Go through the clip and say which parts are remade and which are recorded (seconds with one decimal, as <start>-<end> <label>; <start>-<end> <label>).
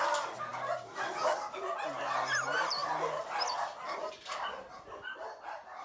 0.0-5.8 recorded